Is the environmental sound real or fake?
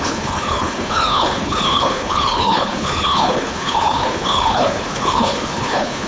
fake